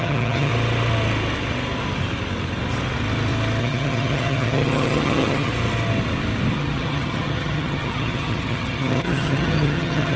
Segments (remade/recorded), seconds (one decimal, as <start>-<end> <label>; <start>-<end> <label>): 0.0-0.5 remade; 0.5-3.6 recorded; 3.6-5.5 remade; 5.5-6.5 recorded; 6.5-10.2 remade